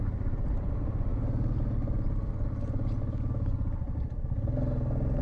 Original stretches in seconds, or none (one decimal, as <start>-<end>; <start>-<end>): 0.0-5.2